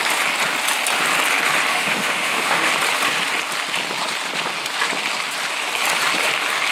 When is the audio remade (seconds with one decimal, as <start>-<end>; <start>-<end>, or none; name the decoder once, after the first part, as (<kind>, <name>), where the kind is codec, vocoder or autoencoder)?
1.7-2.7 (autoencoder, DAC-VAE)